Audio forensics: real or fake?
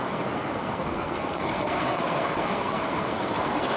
fake